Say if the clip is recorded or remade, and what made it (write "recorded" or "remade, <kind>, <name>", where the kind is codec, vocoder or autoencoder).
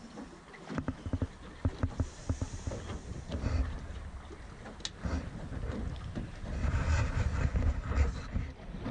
recorded